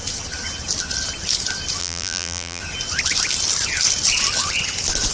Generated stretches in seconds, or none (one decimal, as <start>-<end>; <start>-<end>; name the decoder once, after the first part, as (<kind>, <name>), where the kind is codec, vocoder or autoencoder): 1.8-2.6 (vocoder, BigVGAN v2)